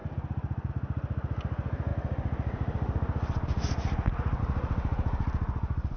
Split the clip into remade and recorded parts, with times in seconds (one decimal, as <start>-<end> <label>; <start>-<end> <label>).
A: 0.0-6.0 recorded